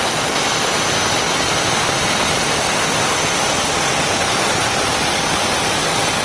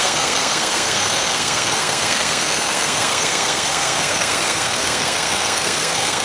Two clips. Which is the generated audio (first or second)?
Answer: second